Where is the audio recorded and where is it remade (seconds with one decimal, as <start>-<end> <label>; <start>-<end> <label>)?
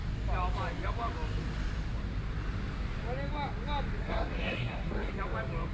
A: 0.0-4.0 recorded; 4.0-5.1 remade; 5.1-5.7 recorded